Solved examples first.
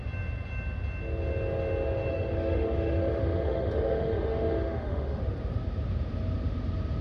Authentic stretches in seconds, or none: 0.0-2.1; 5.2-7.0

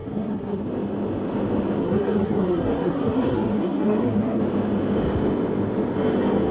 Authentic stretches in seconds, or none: 0.6-1.8; 4.4-6.5

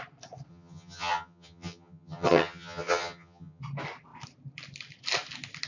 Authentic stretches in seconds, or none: 0.0-0.5; 3.6-5.7

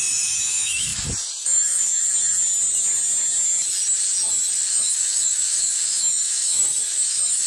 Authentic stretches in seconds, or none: 0.9-1.4; 2.0-4.7